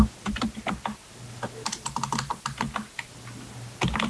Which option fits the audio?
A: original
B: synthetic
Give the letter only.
A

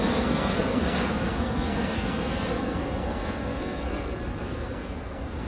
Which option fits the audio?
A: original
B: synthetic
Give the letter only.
B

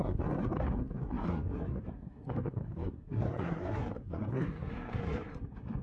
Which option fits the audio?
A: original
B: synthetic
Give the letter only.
B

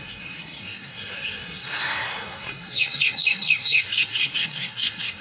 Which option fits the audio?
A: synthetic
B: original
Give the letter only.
A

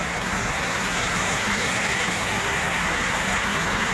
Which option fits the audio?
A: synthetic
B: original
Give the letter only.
A